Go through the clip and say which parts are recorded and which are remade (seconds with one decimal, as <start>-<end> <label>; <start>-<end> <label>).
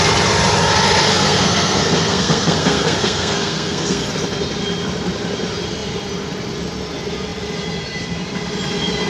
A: 0.0-1.1 recorded; 1.1-4.1 remade; 4.1-9.1 recorded